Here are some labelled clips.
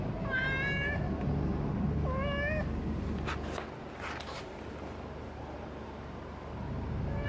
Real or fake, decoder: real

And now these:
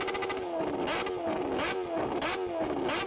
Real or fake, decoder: real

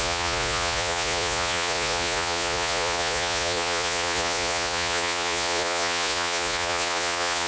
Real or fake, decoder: fake, vocoder, Vocos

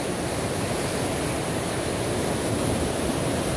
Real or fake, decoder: real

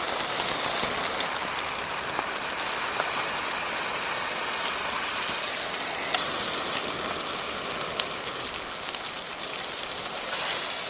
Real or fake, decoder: real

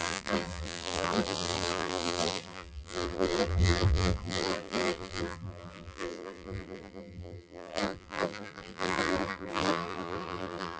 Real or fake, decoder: fake, vocoder, BigVGAN v2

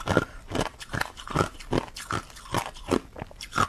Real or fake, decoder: real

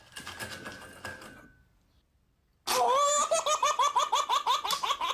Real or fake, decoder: real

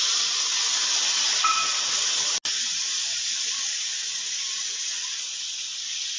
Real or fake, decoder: real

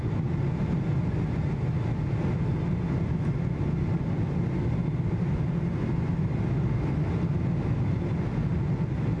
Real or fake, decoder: real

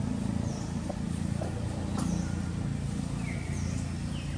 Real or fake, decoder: real